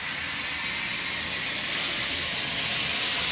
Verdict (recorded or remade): recorded